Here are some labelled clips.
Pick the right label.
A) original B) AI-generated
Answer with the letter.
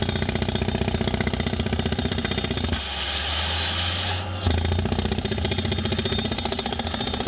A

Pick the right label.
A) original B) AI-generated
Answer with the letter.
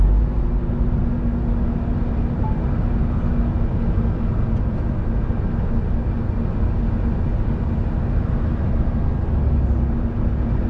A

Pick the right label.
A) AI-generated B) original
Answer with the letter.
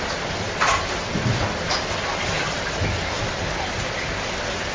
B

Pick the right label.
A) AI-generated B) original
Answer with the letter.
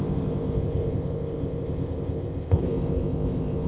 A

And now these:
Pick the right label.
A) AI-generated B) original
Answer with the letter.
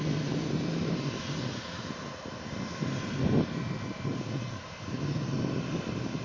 B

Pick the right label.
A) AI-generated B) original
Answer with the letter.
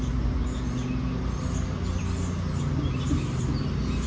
B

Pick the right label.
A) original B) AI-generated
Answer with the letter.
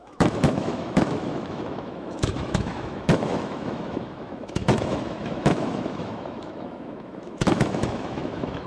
B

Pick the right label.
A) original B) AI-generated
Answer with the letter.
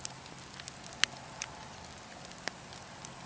A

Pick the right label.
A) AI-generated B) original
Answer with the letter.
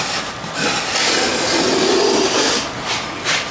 A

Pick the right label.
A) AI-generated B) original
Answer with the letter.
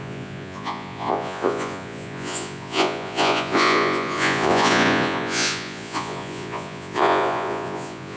A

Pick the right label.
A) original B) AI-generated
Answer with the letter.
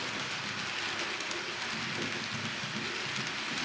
A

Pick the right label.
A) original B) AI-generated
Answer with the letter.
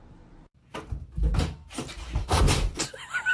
B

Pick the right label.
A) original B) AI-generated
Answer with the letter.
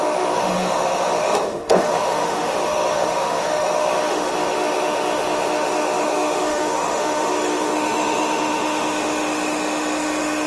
B